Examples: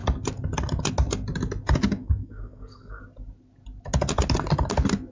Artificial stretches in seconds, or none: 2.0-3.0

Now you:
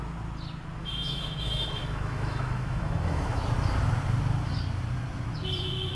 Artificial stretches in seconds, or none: 0.8-3.4

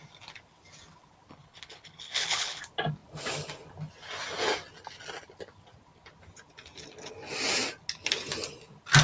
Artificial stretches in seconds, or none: 1.3-2.6

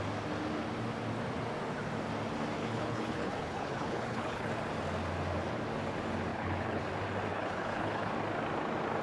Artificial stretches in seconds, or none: 2.6-4.5; 6.3-6.8; 7.3-8.1

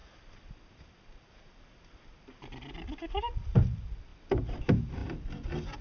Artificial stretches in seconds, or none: none

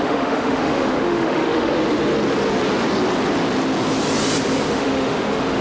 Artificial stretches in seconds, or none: 0.0-1.7; 4.7-5.6

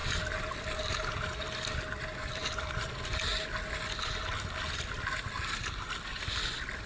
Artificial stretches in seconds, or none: 2.2-3.3; 6.0-6.9